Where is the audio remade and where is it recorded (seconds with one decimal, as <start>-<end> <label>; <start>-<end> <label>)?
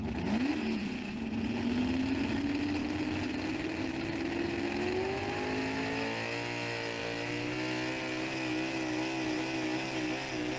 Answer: 0.0-0.6 recorded; 0.6-1.5 remade; 1.5-10.6 recorded